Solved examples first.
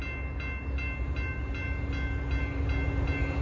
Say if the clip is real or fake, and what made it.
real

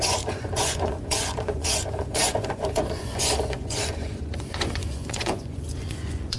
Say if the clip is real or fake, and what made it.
fake, vocoder, Vocos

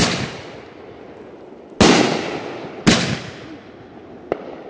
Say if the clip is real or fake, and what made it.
real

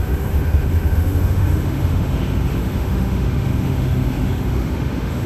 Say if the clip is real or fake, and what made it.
fake, autoencoder, DAC-VAE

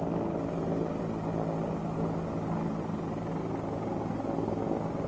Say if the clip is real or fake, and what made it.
real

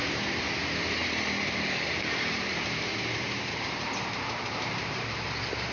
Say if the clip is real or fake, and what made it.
fake, vocoder, BigVGAN v2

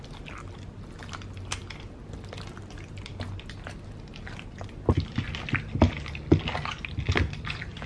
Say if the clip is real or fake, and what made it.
real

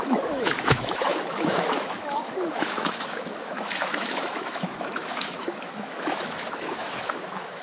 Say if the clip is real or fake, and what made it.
fake, autoencoder, DAC-VAE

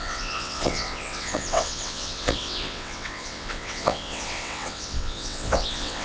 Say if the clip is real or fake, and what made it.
fake, vocoder, WaveNeXt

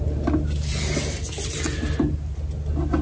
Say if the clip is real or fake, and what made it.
real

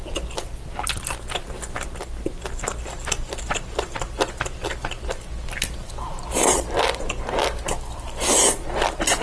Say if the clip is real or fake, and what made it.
real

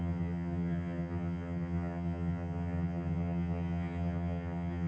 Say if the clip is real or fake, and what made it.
fake, vocoder, HiFi-GAN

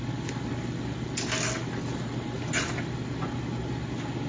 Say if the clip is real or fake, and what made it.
real